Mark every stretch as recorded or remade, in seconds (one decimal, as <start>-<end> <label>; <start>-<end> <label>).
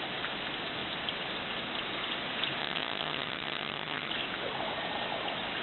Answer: 0.0-2.6 recorded; 2.6-4.1 remade; 4.1-5.6 recorded